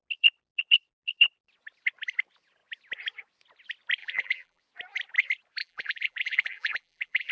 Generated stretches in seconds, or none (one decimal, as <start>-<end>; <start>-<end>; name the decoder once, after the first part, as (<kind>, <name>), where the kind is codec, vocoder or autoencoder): 4.0-4.6 (vocoder, BigVGAN v2); 5.6-7.3